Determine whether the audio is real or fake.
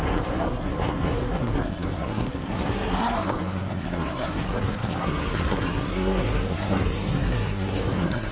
fake